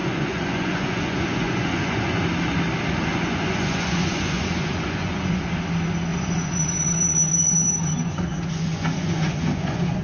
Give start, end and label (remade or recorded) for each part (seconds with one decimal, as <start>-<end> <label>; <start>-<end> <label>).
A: 0.0-2.2 remade; 2.2-3.1 recorded; 3.1-5.4 remade; 5.4-6.1 recorded; 6.1-10.0 remade